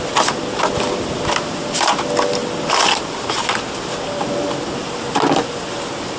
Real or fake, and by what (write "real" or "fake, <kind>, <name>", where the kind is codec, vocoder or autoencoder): real